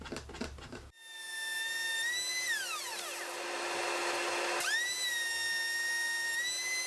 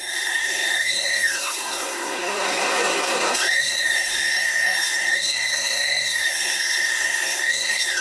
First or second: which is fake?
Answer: second